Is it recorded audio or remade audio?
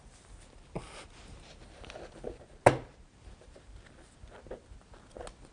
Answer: recorded